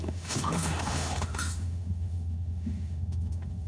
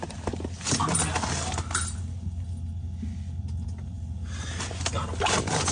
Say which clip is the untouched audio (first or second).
second